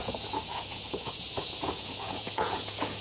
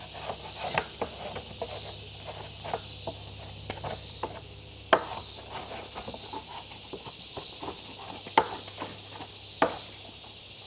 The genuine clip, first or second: second